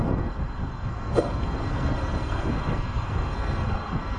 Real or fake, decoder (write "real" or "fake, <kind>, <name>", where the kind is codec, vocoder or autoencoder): fake, codec, SNAC